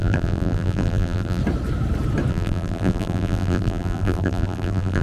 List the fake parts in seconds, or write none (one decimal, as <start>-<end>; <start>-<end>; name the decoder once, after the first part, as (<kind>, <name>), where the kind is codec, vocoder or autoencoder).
0.0-1.4 (vocoder, BigVGAN v2); 2.3-5.0